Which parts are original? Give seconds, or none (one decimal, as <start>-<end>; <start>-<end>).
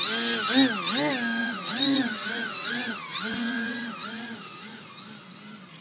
0.0-1.4; 4.9-5.8